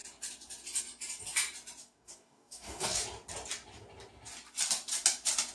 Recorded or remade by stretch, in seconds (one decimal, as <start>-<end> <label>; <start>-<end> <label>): 0.0-1.8 recorded; 1.8-3.0 remade; 3.0-5.5 recorded